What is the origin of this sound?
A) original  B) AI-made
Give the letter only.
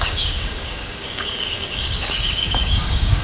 B